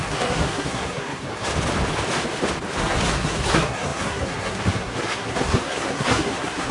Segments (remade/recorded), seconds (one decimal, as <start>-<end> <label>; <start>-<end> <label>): 0.0-1.5 remade; 1.5-2.8 recorded; 2.8-6.7 remade

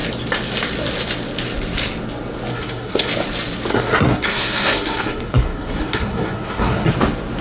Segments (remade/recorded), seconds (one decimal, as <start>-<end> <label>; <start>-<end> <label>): 0.0-2.5 recorded; 2.5-3.1 remade; 3.1-3.7 recorded; 3.7-6.9 remade; 6.9-7.4 recorded

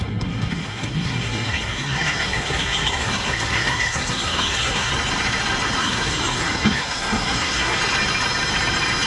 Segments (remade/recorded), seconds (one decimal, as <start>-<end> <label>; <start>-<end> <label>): 0.0-4.9 remade; 4.9-5.8 recorded; 5.8-7.8 remade; 7.8-9.1 recorded

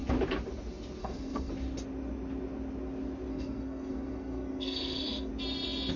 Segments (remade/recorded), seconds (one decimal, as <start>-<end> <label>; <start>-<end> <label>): 0.0-1.0 recorded; 1.0-1.5 remade; 1.5-3.3 recorded; 3.3-5.3 remade; 5.3-6.0 recorded

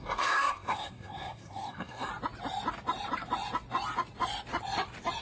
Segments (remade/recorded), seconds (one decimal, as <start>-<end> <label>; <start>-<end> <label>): 0.0-2.1 remade; 2.1-5.2 recorded